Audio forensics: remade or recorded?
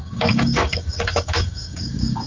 remade